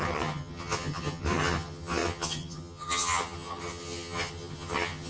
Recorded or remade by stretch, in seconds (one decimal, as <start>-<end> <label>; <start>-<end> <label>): 0.0-5.1 remade